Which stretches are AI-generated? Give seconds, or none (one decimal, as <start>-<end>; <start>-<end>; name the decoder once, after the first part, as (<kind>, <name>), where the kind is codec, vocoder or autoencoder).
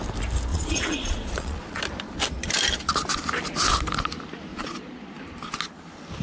0.5-1.8 (vocoder, Vocos); 4.5-5.1